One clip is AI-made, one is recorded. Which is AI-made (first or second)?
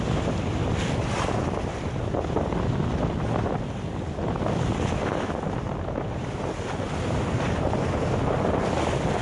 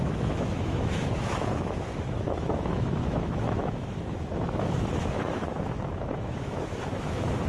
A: second